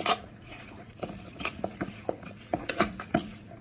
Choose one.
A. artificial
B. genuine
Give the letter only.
A